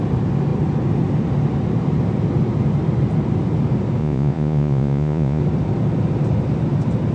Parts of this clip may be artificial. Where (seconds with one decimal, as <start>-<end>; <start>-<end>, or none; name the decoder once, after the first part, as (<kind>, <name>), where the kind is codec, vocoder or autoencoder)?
4.0-5.4 (vocoder, Vocos)